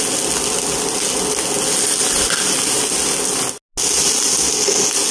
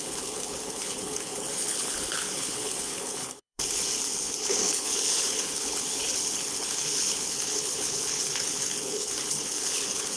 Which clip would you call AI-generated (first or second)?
second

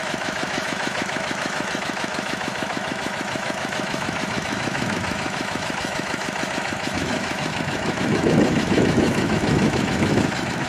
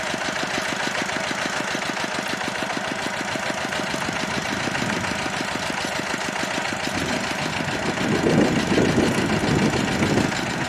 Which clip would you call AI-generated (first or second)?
first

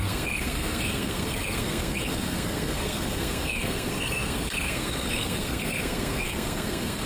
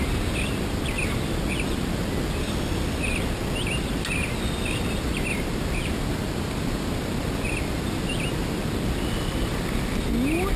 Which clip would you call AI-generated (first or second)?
first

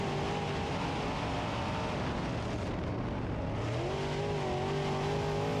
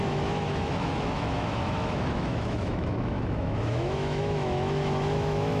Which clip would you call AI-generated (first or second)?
second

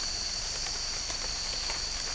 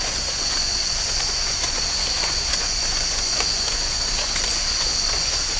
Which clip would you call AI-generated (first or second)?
second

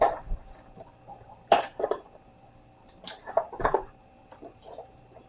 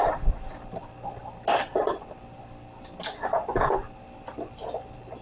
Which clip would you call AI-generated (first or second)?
first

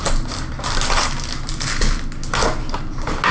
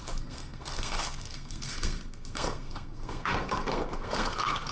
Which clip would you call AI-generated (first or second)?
second